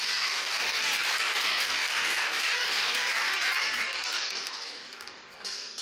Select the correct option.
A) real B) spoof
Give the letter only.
B